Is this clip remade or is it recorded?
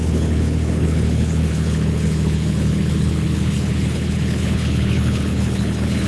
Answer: remade